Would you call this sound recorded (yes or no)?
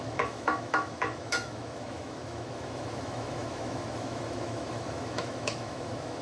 no